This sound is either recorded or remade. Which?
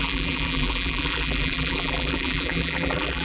remade